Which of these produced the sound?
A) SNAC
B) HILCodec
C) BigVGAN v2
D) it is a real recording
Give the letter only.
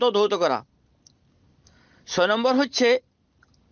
D